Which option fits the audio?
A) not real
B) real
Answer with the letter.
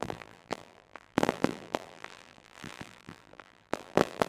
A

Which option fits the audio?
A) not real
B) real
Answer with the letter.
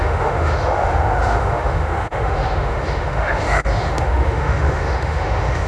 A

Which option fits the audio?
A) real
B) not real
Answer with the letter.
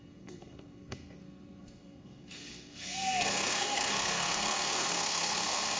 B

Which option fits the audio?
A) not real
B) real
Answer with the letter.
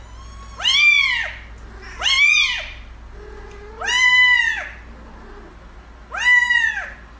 B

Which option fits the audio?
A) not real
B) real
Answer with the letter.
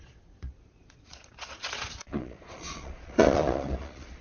A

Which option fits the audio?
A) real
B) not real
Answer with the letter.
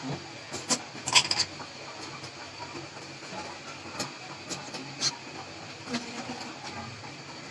A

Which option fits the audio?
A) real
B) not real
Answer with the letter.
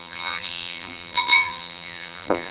B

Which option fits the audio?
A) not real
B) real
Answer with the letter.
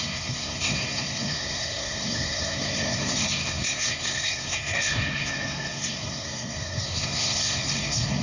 A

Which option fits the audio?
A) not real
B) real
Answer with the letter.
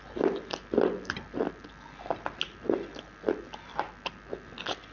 B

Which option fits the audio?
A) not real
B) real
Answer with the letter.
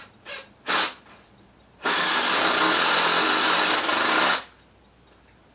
B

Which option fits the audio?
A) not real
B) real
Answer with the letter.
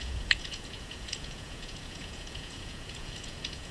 A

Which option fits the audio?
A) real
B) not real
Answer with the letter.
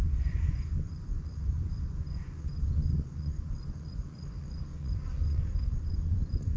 B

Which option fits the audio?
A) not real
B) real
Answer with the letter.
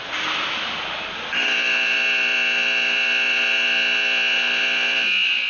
B